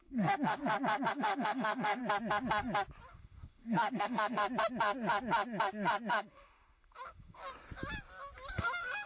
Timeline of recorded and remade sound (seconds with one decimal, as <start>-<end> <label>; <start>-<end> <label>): 0.0-0.6 remade; 0.6-1.1 recorded; 1.1-2.0 remade; 2.0-3.1 recorded; 3.1-4.4 remade; 4.4-6.1 recorded; 6.1-7.4 remade; 7.4-8.5 recorded; 8.5-9.1 remade